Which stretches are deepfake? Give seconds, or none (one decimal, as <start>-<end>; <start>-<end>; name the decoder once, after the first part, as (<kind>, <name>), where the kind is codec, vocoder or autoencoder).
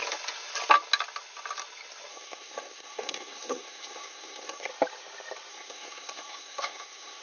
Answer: 2.1-4.7 (codec, SNAC); 5.5-7.2